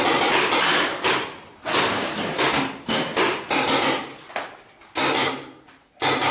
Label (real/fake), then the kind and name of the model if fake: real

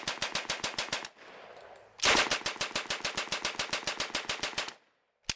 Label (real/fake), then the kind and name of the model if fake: real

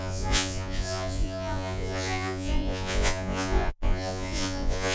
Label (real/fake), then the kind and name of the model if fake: fake, vocoder, Vocos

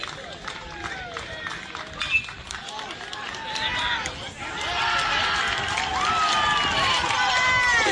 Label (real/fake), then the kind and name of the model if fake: real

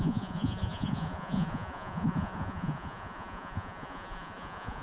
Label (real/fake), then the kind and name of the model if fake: fake, vocoder, Vocos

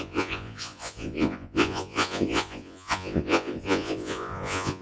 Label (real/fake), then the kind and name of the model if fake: fake, vocoder, Vocos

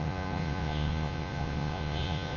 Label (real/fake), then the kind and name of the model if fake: fake, vocoder, Vocos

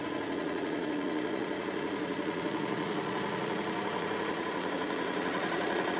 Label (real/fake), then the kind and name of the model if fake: fake, vocoder, Vocos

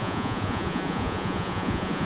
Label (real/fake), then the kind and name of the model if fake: fake, vocoder, Vocos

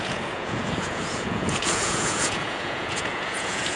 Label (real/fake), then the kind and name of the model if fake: fake, vocoder, Vocos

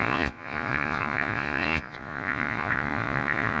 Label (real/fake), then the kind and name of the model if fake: fake, vocoder, Vocos